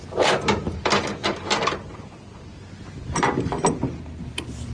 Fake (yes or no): no